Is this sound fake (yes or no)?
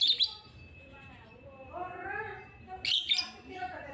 no